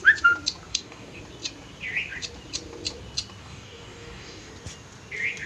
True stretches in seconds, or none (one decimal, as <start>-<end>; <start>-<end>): 0.0-0.7; 1.2-3.4; 4.5-5.5